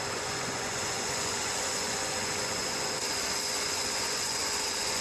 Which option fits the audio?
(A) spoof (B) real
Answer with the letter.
A